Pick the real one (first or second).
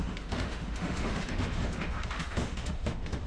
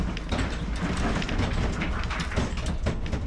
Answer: second